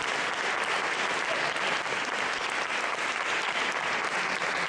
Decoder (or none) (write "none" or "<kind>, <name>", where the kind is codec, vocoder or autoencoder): none